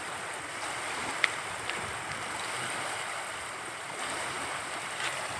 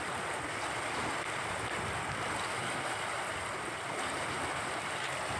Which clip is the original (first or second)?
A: second